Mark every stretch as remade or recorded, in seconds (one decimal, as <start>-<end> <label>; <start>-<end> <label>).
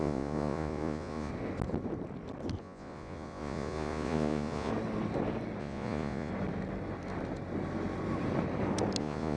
0.0-1.3 remade; 1.3-2.6 recorded; 2.6-4.7 remade; 4.7-5.6 recorded; 5.6-6.3 remade; 6.3-9.0 recorded; 9.0-9.4 remade